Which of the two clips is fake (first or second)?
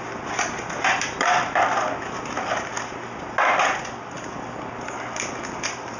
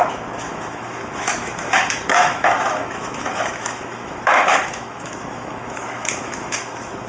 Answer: second